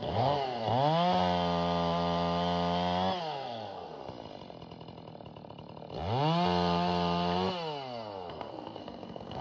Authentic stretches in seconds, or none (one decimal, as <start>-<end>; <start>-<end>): 0.6-3.2; 4.0-8.3